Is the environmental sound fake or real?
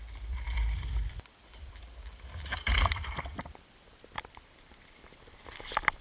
fake